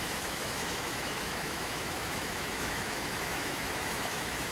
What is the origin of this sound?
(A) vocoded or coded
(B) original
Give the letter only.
A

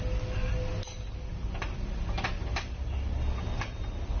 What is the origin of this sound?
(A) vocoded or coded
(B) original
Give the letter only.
B